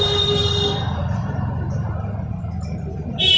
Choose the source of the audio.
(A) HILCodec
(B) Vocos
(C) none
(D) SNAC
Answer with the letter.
C